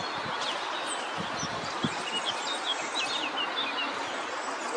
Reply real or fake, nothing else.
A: real